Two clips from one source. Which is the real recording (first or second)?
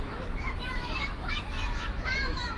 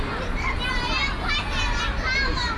second